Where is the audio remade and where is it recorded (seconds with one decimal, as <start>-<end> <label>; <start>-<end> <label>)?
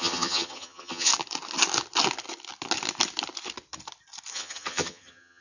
0.0-1.1 remade; 1.1-4.3 recorded; 4.3-5.4 remade